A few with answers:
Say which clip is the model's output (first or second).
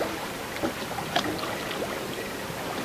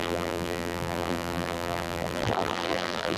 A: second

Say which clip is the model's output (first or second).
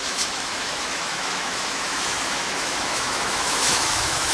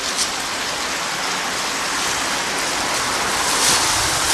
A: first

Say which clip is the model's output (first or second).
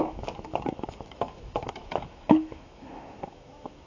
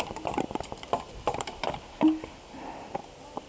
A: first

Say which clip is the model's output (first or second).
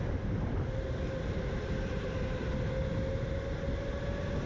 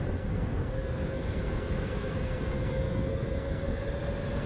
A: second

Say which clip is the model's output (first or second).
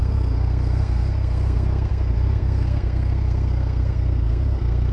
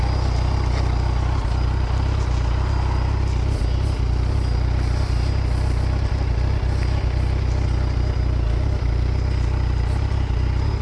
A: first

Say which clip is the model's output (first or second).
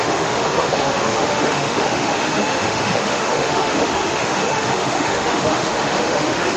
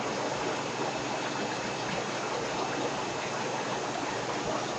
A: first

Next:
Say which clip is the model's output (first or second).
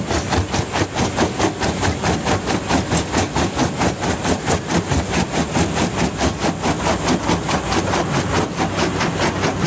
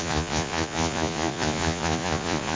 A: second